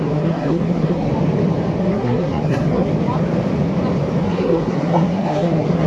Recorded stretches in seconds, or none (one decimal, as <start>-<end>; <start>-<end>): 1.1-1.8; 2.9-4.2